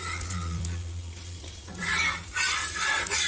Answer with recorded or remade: remade